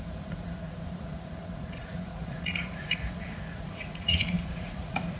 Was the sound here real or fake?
fake